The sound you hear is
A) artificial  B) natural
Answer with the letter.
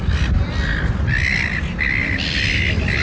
B